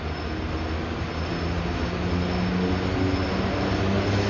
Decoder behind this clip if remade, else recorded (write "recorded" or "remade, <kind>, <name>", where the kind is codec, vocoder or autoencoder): recorded